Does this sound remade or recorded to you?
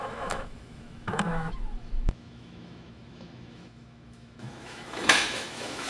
remade